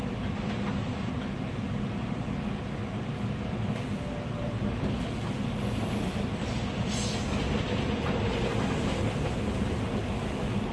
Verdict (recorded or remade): recorded